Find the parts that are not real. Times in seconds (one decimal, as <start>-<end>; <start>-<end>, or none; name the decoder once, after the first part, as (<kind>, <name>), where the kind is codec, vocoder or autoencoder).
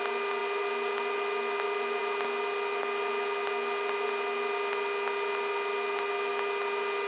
none